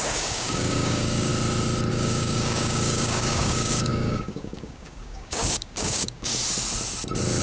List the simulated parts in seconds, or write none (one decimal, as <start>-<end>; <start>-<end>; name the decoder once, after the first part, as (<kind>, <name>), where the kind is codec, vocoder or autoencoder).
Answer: 0.0-1.3 (codec, DAC); 1.9-6.3